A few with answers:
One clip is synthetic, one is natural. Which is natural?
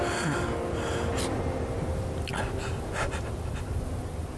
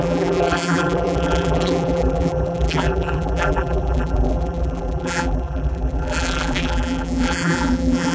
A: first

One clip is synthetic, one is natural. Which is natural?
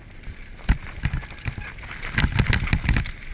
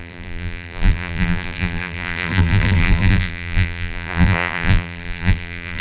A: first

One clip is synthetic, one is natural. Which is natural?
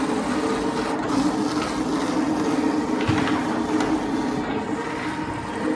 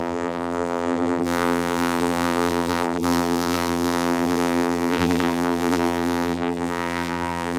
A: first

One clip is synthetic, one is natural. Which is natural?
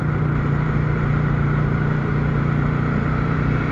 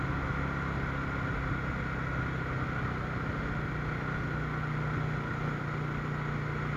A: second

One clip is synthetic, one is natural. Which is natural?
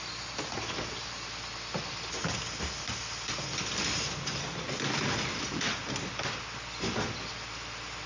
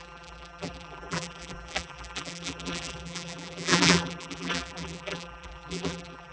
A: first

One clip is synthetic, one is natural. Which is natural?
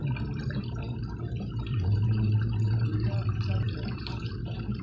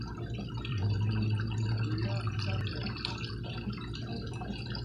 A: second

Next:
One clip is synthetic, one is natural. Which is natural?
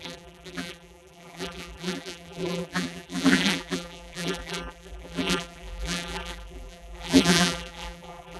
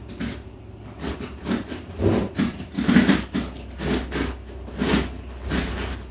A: second